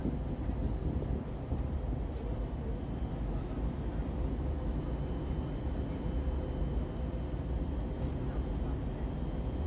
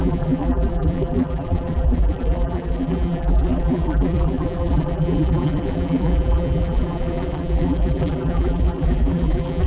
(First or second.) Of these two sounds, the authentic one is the first